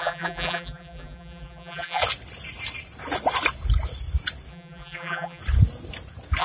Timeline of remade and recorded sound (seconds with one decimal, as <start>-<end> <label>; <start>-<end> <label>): 0.0-2.0 remade; 2.0-4.5 recorded; 4.5-5.4 remade; 5.4-6.4 recorded